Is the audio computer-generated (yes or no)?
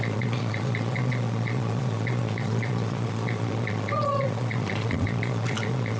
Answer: yes